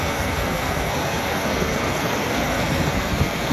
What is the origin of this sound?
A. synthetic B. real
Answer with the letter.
A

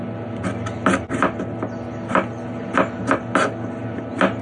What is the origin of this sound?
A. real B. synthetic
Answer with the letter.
A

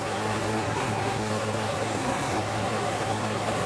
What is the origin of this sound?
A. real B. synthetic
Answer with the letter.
B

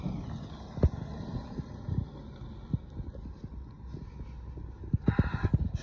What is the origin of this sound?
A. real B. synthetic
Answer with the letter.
A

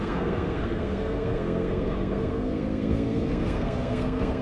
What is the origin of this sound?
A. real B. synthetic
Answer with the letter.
B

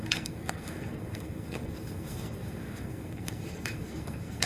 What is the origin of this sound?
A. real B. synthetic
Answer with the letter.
B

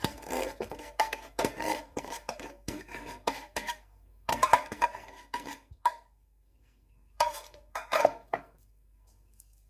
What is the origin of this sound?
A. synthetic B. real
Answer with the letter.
A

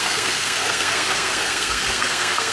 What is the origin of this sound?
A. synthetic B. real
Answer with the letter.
A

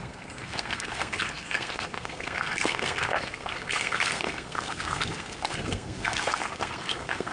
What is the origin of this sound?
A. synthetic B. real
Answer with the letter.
A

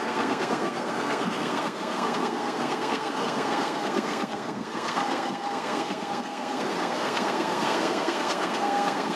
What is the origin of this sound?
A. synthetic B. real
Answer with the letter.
A